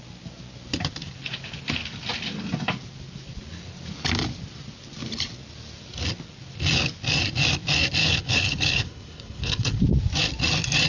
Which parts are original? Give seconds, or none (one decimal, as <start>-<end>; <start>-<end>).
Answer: 0.0-8.0; 9.8-10.9